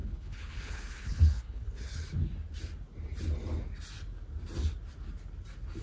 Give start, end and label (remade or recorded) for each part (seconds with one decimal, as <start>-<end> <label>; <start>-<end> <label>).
0.0-2.2 remade; 2.2-5.8 recorded